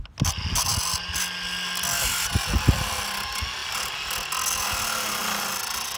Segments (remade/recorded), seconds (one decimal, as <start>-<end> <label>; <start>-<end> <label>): 0.0-6.0 recorded

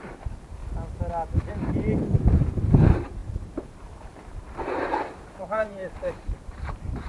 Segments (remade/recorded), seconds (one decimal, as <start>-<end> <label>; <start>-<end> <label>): 0.0-0.6 remade; 0.6-1.5 recorded; 1.5-7.1 remade

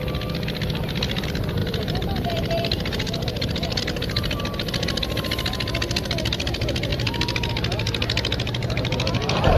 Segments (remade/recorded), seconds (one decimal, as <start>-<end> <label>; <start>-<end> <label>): 0.0-1.6 recorded; 1.6-3.8 remade; 3.8-6.9 recorded; 6.9-7.5 remade; 7.5-8.6 recorded; 8.6-9.6 remade

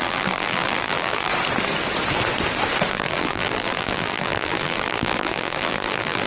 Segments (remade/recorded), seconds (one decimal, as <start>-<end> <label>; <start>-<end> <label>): 0.0-1.3 remade; 1.3-2.9 recorded; 2.9-6.3 remade